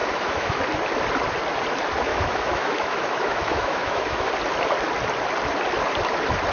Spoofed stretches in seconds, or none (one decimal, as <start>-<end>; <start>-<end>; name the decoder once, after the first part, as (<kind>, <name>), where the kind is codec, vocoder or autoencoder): 0.0-0.6 (autoencoder, DAC-VAE); 2.1-4.3